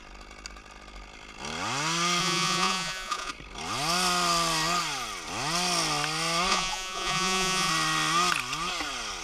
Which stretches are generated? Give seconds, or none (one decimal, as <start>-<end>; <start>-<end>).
2.2-3.3; 6.5-7.7

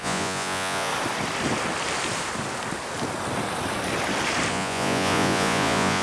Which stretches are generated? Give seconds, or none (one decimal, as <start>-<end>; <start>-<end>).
0.0-0.9; 4.5-6.0